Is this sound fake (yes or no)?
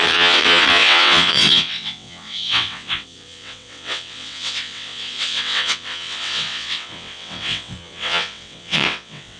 yes